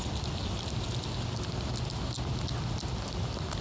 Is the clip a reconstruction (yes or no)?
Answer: no